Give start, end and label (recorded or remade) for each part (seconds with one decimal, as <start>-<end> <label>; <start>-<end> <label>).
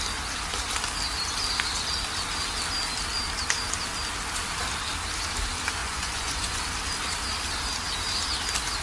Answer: 0.0-5.8 recorded; 5.8-6.6 remade; 6.6-8.8 recorded